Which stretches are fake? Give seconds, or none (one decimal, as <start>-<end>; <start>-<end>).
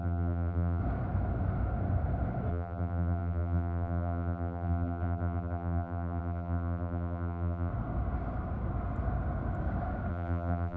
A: 0.0-0.8; 2.5-7.7; 10.1-10.8